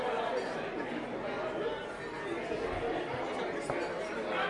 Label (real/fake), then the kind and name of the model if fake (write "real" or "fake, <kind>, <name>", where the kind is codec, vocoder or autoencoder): real